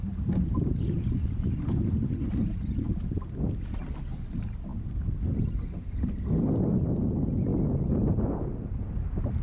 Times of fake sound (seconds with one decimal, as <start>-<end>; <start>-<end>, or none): none